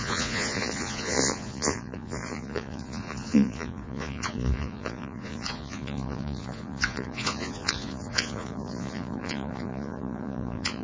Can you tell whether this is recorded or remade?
remade